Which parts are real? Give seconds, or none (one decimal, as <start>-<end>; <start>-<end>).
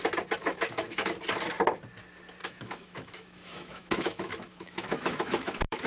0.0-0.4; 1.1-2.4